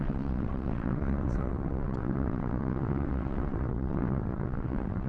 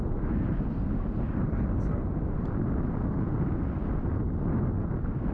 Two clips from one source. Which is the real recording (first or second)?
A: second